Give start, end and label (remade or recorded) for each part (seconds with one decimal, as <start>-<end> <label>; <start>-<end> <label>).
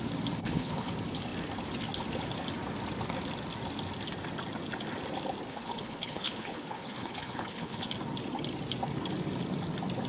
0.0-0.4 recorded; 0.4-0.9 remade; 0.9-5.5 recorded; 5.5-7.9 remade; 7.9-10.1 recorded